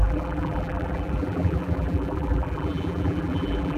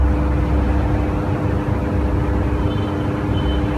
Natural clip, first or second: second